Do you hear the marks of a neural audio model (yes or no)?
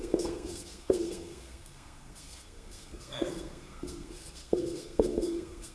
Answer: yes